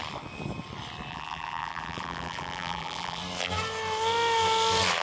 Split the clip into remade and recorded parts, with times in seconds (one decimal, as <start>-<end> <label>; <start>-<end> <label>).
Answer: 0.0-1.1 recorded; 1.1-3.2 remade; 3.2-5.0 recorded